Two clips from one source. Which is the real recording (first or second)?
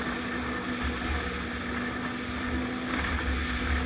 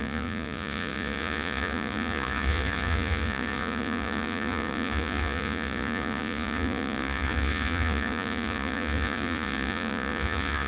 first